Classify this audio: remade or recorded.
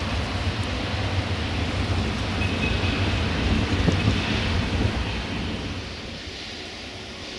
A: recorded